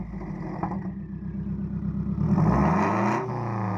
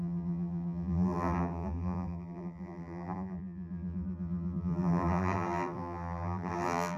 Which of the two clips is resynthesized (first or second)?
second